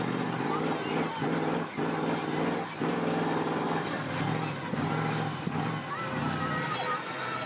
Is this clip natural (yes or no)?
yes